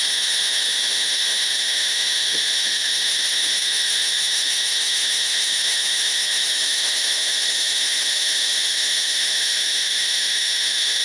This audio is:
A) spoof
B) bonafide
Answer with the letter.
A